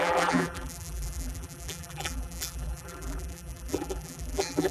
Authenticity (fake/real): fake